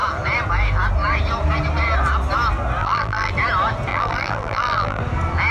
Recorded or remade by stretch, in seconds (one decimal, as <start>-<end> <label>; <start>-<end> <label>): 0.0-2.8 recorded; 2.8-3.3 remade; 3.3-3.9 recorded; 3.9-5.0 remade; 5.0-5.5 recorded

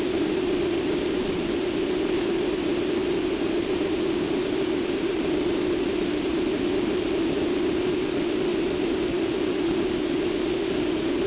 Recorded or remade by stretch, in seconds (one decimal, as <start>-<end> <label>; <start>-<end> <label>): 0.0-6.3 remade; 6.3-7.3 recorded; 7.3-8.5 remade; 8.5-10.9 recorded; 10.9-11.3 remade

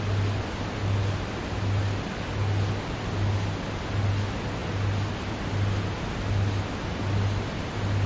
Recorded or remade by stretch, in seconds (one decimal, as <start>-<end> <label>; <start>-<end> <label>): 0.0-8.1 recorded

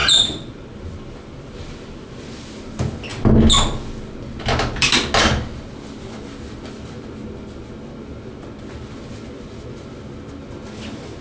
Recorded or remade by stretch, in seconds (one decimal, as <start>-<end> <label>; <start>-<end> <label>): 0.0-1.3 remade; 1.3-11.2 recorded

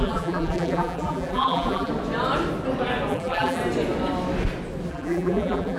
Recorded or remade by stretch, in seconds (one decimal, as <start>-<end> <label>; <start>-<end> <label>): 0.0-1.9 remade; 1.9-3.1 recorded; 3.1-3.6 remade; 3.6-4.9 recorded; 4.9-5.8 remade

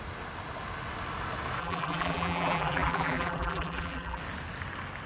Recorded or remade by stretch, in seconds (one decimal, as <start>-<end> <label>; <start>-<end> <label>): 0.0-1.6 recorded; 1.6-4.2 remade; 4.2-5.1 recorded

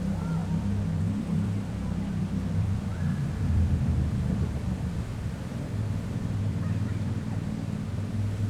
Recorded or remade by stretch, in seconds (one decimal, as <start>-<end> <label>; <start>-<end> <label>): 0.0-8.5 remade

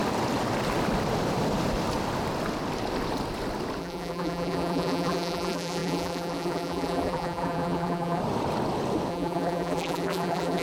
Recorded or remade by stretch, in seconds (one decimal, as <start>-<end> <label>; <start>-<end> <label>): 0.0-3.8 recorded; 3.8-8.2 remade; 8.2-9.1 recorded; 9.1-10.6 remade